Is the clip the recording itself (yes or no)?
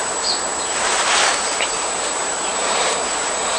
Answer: no